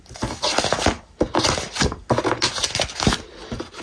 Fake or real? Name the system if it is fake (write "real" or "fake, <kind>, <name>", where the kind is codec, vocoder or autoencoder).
real